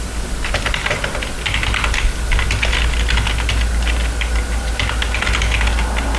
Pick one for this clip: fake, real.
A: real